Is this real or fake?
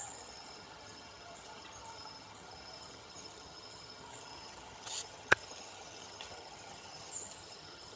fake